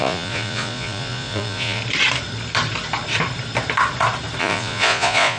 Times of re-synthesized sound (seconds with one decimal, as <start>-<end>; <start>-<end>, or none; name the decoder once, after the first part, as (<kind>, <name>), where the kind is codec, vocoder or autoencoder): 0.0-1.8 (vocoder, Vocos); 4.4-5.4